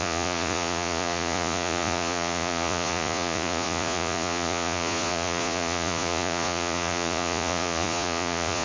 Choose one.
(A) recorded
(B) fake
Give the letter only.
B